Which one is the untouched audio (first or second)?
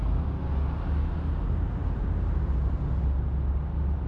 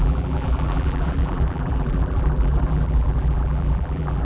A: first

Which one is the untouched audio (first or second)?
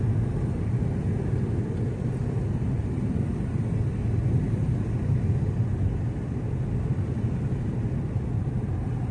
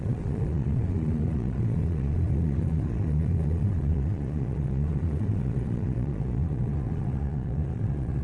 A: first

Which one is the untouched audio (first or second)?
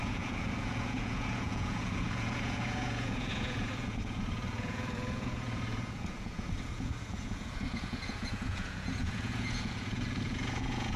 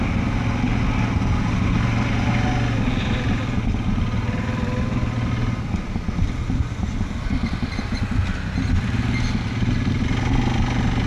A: second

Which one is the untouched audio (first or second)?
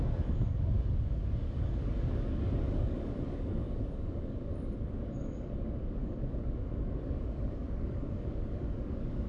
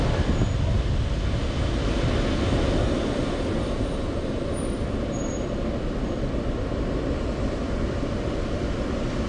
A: second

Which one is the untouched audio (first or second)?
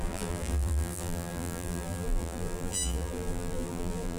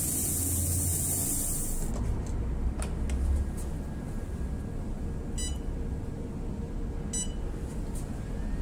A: second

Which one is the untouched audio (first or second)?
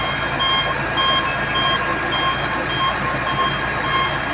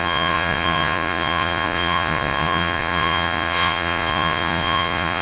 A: first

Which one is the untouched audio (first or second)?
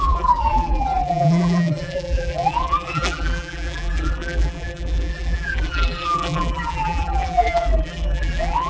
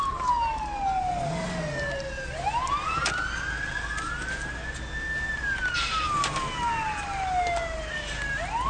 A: second